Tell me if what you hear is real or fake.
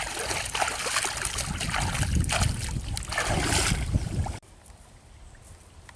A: real